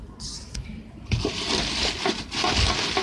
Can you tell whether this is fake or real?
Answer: real